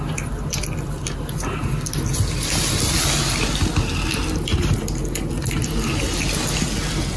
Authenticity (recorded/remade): recorded